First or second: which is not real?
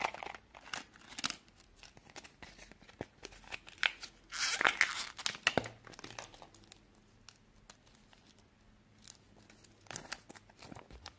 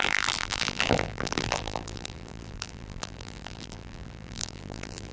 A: second